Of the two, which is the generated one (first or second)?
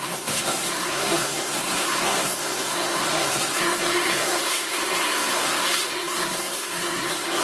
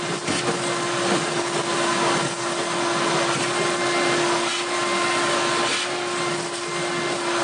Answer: first